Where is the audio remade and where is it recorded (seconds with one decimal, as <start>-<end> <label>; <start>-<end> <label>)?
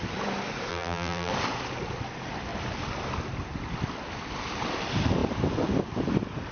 0.0-0.7 recorded; 0.7-1.3 remade; 1.3-6.5 recorded